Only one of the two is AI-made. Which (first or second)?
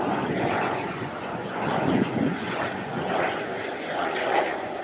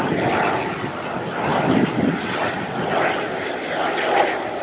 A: first